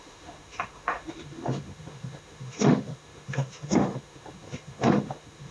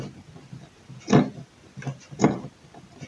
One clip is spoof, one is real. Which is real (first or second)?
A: second